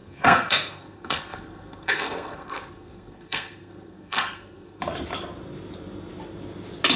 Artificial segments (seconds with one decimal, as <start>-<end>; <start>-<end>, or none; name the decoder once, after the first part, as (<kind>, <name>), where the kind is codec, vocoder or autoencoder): 0.0-4.8 (codec, SNAC)